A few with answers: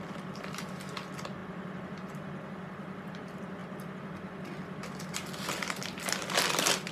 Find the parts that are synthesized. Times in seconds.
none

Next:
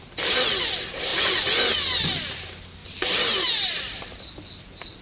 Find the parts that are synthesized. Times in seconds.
2.8-4.3 (vocoder, BigVGAN v2)

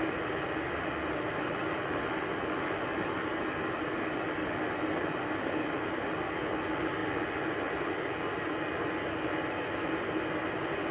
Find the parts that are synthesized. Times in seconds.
none

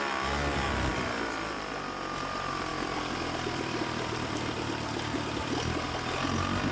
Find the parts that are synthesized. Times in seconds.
0.9-1.7 (vocoder, BigVGAN v2); 2.7-5.5